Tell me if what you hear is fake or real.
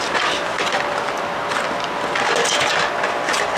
real